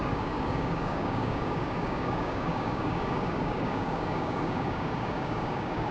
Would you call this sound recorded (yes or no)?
no